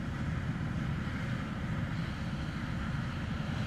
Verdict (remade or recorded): recorded